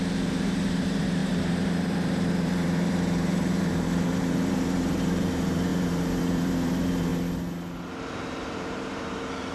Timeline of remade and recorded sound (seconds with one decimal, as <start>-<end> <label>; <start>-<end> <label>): 0.0-7.1 remade; 7.1-8.0 recorded; 8.0-9.5 remade